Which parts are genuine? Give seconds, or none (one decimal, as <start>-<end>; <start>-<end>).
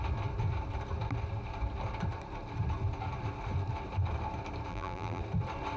0.0-4.7; 5.2-5.8